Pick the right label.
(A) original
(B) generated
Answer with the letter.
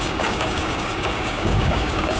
B